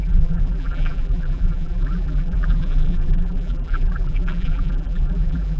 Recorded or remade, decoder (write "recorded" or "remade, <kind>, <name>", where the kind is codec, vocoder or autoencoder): remade, vocoder, BigVGAN v2